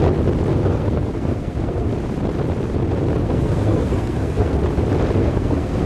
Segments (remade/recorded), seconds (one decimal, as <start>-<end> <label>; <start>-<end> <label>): 0.0-0.5 recorded; 0.5-1.9 remade; 1.9-3.2 recorded; 3.2-4.6 remade; 4.6-5.2 recorded; 5.2-5.9 remade